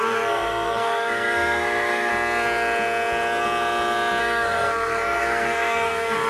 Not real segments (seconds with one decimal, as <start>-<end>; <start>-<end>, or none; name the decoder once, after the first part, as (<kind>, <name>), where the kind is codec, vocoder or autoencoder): 0.0-2.1 (codec, SNAC); 4.2-6.3